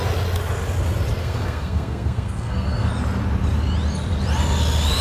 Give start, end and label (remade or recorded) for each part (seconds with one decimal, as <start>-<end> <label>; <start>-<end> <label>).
0.0-1.2 recorded; 1.2-2.9 remade; 2.9-5.0 recorded